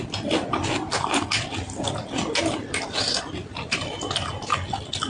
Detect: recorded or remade recorded